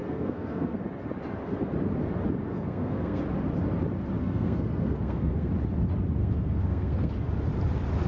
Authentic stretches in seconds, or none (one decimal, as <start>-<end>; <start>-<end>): 0.8-2.5; 3.2-4.2; 5.5-6.2; 7.1-8.1